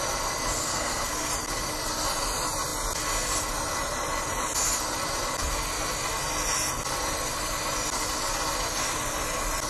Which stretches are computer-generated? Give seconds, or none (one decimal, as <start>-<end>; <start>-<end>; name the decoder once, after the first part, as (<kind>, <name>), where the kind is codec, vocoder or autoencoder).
0.6-1.3 (codec, SNAC)